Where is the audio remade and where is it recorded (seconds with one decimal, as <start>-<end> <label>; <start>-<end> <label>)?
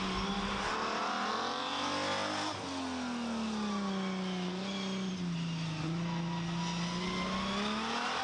0.0-8.2 recorded